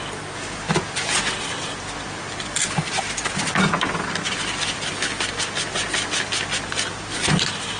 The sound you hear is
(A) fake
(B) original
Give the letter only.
B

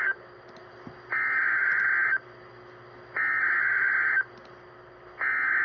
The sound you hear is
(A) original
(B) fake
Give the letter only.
A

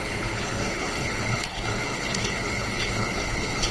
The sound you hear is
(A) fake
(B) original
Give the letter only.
A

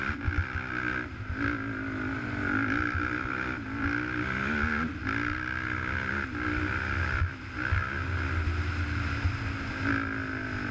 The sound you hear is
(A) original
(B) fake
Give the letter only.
A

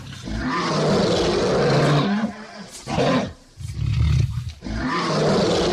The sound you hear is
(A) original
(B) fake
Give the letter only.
A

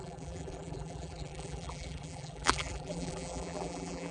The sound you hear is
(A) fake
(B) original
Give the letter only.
A